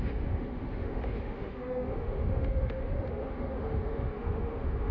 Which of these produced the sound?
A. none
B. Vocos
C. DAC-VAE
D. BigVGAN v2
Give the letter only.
C